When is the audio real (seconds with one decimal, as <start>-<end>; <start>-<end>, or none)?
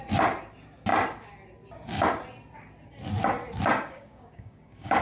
0.0-3.7